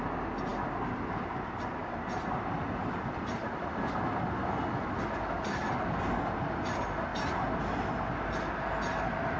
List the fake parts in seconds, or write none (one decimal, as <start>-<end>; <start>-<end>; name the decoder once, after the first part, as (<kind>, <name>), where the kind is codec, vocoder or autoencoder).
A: 7.1-7.6 (vocoder, BigVGAN v2)